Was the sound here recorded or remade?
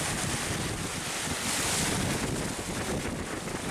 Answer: recorded